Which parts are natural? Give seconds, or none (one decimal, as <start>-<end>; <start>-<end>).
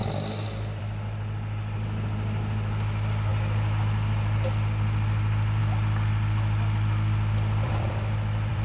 0.0-0.8